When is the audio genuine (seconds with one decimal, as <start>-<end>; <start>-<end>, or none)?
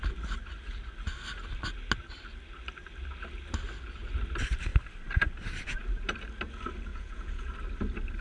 0.0-6.9; 7.5-8.2